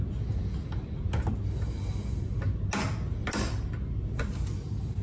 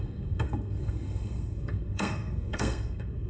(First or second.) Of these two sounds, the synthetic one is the second